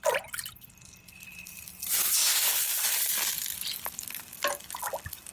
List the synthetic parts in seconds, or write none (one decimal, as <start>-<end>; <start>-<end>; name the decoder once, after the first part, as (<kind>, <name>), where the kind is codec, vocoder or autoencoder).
none